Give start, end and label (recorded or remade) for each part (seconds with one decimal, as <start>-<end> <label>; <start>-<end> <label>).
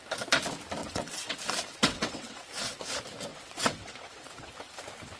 0.0-0.8 recorded; 0.8-1.4 remade; 1.4-1.8 recorded; 1.8-2.5 remade; 2.5-3.3 recorded; 3.3-4.5 remade; 4.5-5.2 recorded